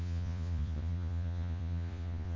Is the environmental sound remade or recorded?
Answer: remade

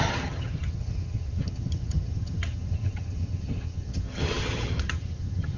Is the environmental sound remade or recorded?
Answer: remade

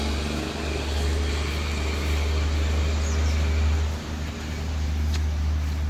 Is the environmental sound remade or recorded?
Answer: recorded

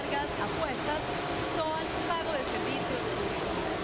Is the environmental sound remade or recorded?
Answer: recorded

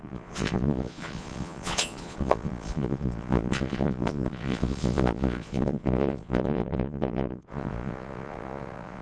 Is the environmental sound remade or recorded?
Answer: remade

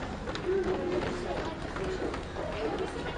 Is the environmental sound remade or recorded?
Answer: recorded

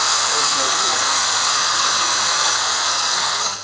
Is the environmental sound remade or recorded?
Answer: remade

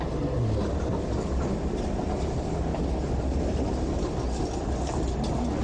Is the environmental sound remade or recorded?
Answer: recorded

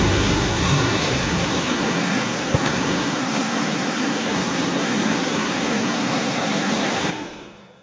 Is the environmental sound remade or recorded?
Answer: remade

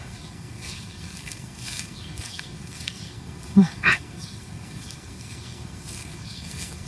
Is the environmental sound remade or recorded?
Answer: remade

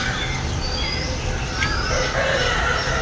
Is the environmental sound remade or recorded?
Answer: recorded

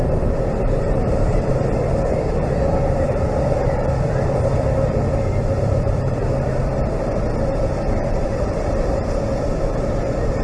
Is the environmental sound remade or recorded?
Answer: remade